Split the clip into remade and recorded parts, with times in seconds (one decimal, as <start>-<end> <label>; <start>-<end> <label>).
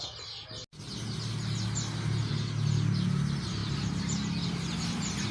0.0-5.3 recorded